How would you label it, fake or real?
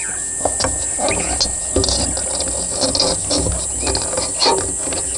real